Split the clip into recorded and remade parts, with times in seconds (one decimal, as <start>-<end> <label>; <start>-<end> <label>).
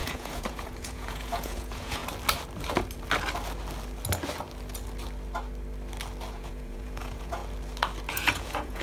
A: 0.0-2.0 remade; 2.0-6.3 recorded; 6.3-7.4 remade; 7.4-8.1 recorded; 8.1-8.8 remade